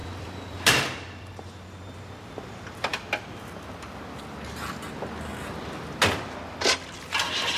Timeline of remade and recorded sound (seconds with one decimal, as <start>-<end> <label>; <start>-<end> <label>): 0.0-1.3 remade; 1.3-7.6 recorded